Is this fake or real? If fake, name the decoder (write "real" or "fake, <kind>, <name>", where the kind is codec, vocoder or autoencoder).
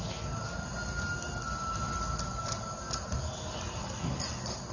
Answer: real